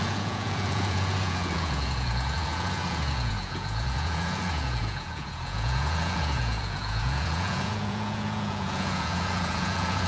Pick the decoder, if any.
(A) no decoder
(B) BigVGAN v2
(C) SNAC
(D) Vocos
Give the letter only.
D